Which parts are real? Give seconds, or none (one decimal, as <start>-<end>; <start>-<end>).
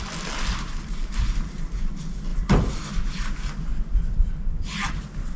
0.0-5.4